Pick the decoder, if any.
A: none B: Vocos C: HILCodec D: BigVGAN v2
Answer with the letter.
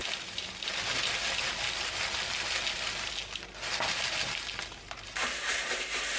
A